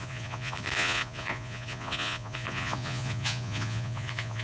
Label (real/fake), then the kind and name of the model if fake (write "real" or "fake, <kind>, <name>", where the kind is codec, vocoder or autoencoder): fake, vocoder, Vocos